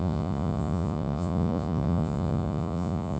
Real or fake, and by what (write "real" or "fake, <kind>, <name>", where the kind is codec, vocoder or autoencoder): fake, vocoder, Vocos